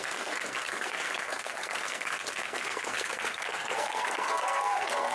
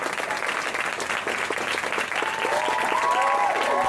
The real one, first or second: second